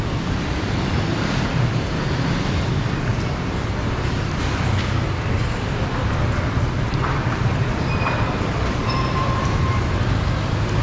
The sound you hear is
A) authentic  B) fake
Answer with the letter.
B